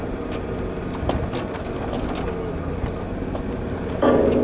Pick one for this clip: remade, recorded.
recorded